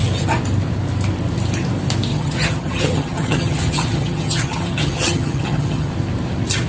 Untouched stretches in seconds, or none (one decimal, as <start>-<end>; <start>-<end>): 0.0-2.1; 5.9-6.7